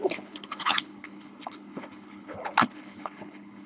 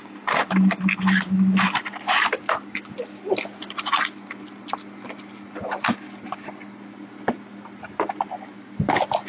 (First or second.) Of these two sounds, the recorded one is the second